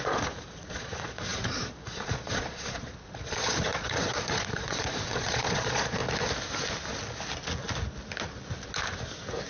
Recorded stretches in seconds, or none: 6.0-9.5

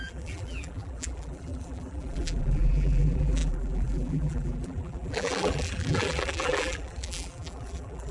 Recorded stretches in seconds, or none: none

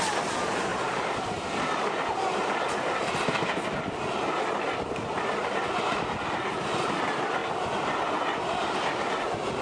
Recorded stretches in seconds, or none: 0.0-9.6

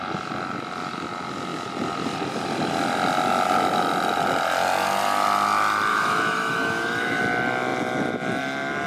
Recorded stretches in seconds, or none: 0.0-5.9; 7.2-8.9